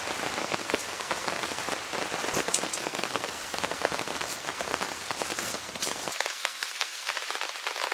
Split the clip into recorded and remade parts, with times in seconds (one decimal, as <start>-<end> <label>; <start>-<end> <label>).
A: 0.0-0.4 recorded; 0.4-1.6 remade; 1.6-2.4 recorded; 2.4-7.1 remade; 7.1-7.9 recorded